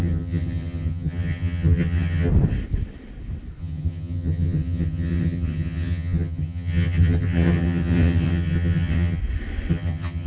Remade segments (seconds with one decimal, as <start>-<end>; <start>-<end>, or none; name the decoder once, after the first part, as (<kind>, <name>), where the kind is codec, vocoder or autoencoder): 0.0-2.3 (vocoder, HiFi-GAN); 3.6-9.2; 9.7-10.3

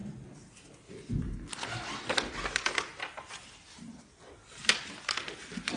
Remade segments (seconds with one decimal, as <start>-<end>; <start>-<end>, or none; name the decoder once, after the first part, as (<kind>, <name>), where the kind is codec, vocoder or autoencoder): none

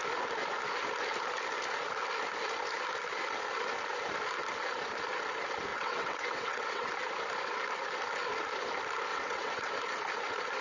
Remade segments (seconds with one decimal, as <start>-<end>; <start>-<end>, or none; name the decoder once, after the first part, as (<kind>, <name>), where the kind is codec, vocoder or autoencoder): 5.7-6.9 (vocoder, WaveNeXt); 9.1-9.7

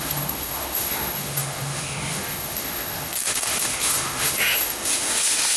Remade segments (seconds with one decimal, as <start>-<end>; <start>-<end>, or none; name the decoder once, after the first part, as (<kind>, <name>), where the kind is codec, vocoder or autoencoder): 0.0-5.6 (autoencoder, DAC-VAE)

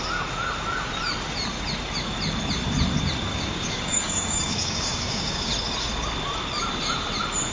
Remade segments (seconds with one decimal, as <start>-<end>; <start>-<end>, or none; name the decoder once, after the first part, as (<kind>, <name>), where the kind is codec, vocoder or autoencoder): 3.3-5.5 (codec, DAC)

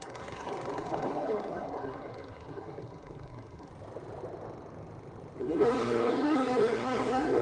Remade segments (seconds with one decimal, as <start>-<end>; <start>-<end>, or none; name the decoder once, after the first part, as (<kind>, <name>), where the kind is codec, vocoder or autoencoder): 0.0-3.7 (codec, SNAC); 5.4-7.4

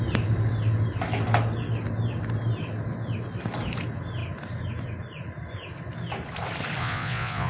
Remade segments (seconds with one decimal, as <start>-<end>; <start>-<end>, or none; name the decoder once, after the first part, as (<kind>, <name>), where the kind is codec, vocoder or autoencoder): 6.8-7.5 (vocoder, Vocos)